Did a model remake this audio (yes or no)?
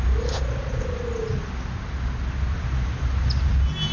no